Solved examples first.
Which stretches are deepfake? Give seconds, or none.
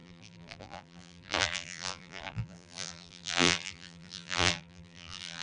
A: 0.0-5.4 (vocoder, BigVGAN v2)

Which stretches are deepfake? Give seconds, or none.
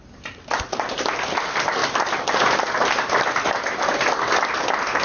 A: none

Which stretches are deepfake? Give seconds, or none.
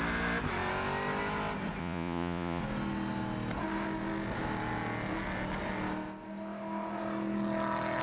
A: 1.8-2.6 (vocoder, Vocos)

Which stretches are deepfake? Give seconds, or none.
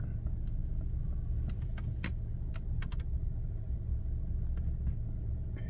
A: 0.6-4.0 (vocoder, BigVGAN v2)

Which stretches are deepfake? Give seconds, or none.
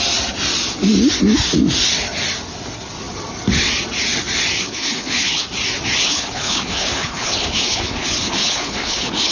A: 4.6-5.5 (codec, HILCodec); 6.0-9.3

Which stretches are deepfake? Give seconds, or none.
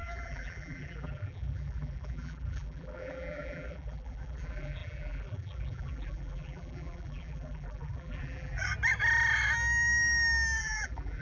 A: 0.0-8.6 (vocoder, BigVGAN v2); 10.6-11.2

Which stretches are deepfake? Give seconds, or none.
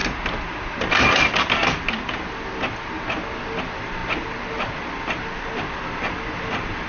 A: none